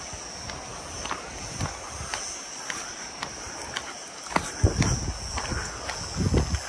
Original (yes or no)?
yes